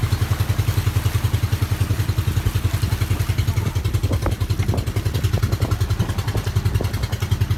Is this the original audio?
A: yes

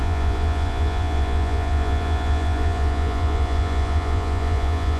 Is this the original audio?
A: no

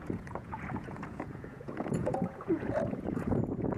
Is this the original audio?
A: no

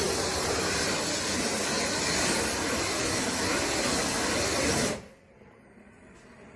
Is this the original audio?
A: yes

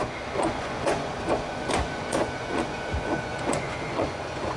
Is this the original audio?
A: no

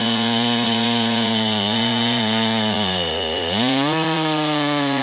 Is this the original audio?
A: no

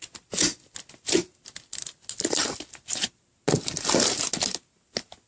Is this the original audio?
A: yes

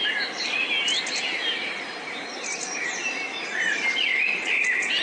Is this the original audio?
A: yes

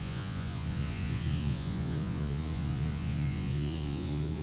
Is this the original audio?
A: no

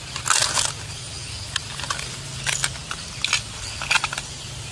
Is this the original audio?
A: yes